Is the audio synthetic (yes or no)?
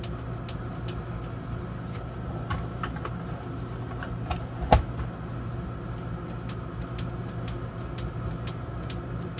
no